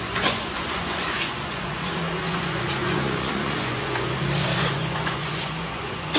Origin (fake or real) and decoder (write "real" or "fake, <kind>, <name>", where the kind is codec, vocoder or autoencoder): fake, vocoder, Vocos